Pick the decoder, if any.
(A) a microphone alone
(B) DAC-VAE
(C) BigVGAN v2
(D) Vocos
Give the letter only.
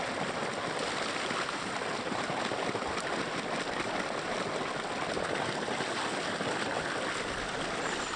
A